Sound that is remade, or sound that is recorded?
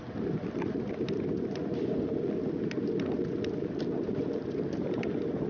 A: recorded